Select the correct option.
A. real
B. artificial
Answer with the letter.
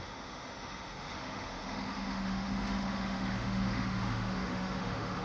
B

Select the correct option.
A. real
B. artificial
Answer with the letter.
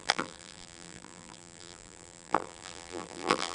B